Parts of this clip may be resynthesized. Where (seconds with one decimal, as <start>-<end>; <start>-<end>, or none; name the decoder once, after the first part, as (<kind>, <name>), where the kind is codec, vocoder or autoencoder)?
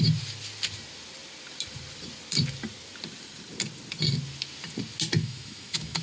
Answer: 5.2-6.0 (autoencoder, DAC-VAE)